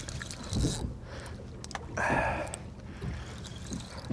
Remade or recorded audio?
recorded